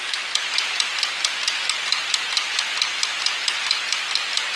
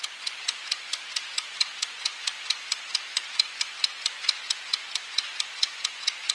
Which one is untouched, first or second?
first